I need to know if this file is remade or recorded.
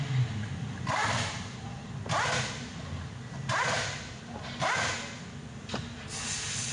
recorded